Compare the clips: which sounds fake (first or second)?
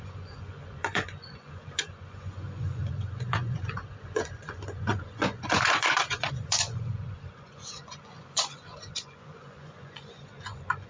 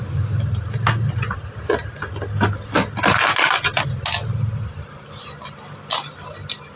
first